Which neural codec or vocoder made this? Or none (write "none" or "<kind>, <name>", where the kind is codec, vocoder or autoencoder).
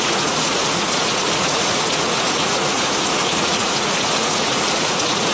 vocoder, Vocos